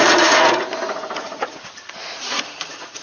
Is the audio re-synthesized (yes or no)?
yes